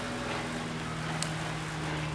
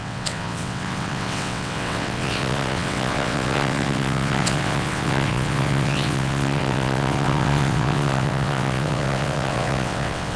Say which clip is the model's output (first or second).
second